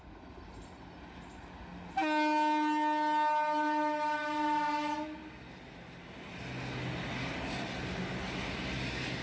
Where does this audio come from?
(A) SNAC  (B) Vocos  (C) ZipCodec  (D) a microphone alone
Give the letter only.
D